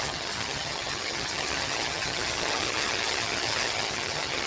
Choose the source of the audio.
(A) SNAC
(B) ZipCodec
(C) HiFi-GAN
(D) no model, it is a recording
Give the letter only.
C